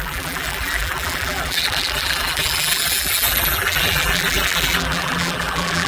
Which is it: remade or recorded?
remade